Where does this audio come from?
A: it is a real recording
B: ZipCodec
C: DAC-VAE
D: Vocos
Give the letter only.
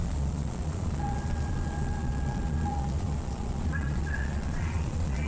D